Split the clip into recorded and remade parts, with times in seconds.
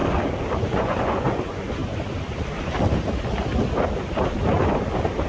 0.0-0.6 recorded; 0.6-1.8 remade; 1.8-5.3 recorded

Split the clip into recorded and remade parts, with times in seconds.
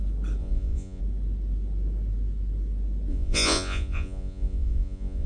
0.0-0.4 recorded; 0.4-1.0 remade; 1.0-3.1 recorded; 3.1-5.3 remade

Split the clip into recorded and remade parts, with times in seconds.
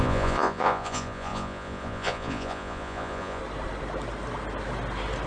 0.0-3.4 remade; 3.4-5.3 recorded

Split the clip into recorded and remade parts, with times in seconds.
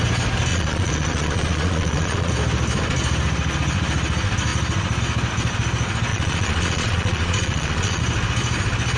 0.0-0.5 recorded; 0.5-2.3 remade; 2.3-6.1 recorded; 6.1-8.0 remade; 8.0-9.0 recorded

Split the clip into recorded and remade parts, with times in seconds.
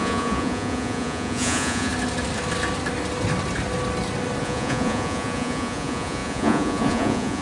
0.0-1.9 remade; 1.9-4.4 recorded; 4.4-7.4 remade